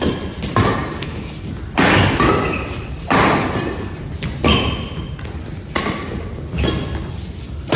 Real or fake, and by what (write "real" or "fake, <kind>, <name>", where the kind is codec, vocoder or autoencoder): real